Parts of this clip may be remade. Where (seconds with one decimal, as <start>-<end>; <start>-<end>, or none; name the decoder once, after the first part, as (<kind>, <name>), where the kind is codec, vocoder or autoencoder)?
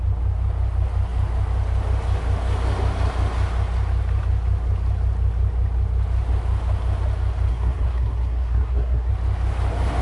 7.5-9.1 (codec, SNAC)